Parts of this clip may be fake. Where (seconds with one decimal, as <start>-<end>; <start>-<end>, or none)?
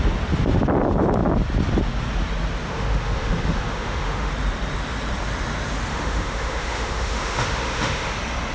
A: 2.7-4.3; 5.9-8.1